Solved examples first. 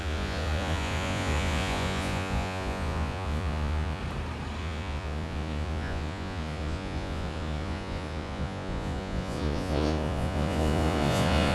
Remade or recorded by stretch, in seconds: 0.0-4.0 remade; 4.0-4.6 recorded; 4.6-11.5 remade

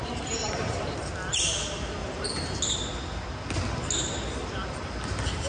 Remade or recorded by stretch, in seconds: 0.0-1.0 remade; 1.0-2.0 recorded; 2.0-2.6 remade; 2.6-5.5 recorded

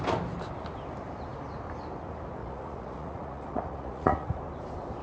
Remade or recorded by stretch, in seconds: 0.0-2.4 recorded; 2.4-4.4 remade; 4.4-5.0 recorded